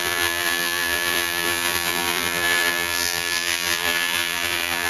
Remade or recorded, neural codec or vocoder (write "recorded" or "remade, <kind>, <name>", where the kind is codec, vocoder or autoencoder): remade, vocoder, BigVGAN v2